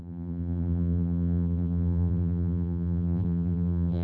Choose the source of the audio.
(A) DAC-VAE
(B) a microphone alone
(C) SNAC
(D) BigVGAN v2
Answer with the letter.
D